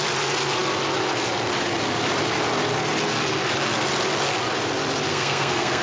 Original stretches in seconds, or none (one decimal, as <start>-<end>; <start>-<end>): 0.0-5.1